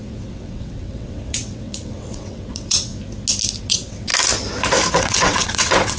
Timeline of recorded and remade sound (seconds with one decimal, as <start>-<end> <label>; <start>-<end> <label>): 0.0-2.9 remade; 2.9-3.6 recorded; 3.6-4.1 remade; 4.1-4.9 recorded; 4.9-6.0 remade